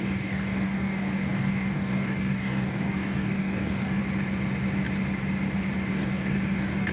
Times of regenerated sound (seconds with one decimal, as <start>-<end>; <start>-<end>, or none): 0.0-4.0; 5.9-6.9